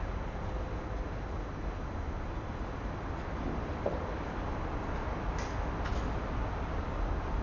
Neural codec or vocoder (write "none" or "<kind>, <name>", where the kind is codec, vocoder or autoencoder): none